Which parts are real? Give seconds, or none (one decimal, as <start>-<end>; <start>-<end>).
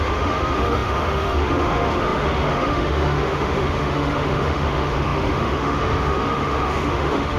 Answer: none